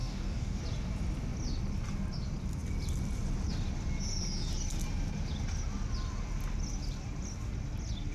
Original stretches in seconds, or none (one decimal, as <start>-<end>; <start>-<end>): 0.6-8.1